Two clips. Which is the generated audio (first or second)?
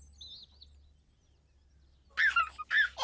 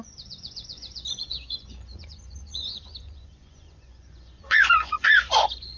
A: second